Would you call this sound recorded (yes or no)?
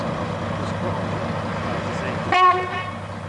yes